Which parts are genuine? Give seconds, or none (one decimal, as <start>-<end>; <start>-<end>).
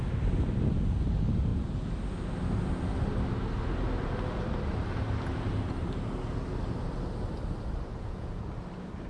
0.0-7.9; 8.5-9.1